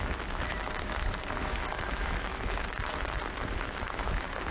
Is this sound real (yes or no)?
no